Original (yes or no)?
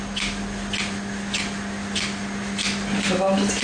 yes